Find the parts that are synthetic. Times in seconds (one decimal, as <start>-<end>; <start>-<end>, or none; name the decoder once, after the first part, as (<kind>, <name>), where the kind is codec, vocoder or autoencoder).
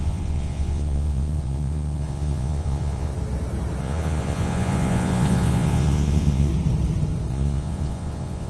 0.0-3.1 (vocoder, Vocos); 3.8-6.5; 7.3-8.5